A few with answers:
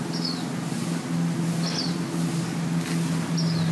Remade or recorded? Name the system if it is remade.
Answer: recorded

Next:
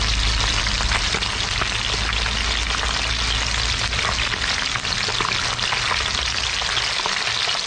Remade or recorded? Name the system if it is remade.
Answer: recorded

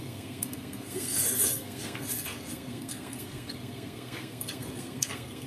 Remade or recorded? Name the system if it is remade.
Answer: remade, codec, SNAC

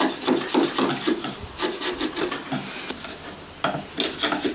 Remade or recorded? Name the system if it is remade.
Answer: recorded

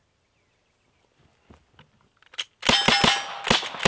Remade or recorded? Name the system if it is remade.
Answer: recorded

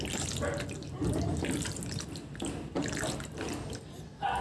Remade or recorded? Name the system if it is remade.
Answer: recorded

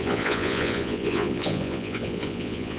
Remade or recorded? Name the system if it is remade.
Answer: remade, vocoder, Vocos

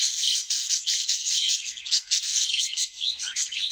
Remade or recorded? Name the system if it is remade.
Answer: remade, codec, SNAC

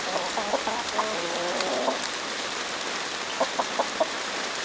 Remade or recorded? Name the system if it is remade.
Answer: recorded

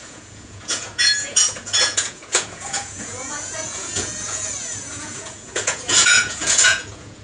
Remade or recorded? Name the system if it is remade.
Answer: remade, vocoder, Vocos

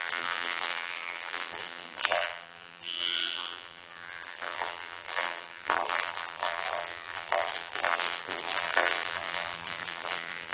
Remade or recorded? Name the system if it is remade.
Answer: remade, vocoder, BigVGAN v2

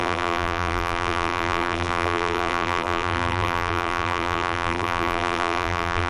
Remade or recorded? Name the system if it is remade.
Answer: remade, vocoder, BigVGAN v2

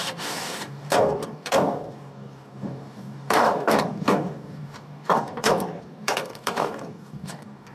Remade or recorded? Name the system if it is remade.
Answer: remade, codec, DAC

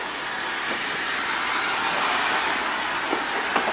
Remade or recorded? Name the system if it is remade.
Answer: recorded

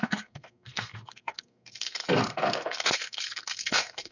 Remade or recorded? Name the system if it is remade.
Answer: remade, codec, SNAC